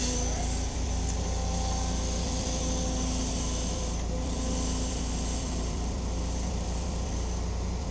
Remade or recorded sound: remade